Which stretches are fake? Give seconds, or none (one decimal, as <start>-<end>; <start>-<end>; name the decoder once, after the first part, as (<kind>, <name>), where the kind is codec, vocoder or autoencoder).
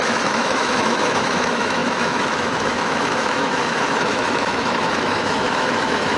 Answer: 0.0-6.2 (autoencoder, DAC-VAE)